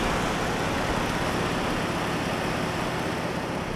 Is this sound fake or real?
real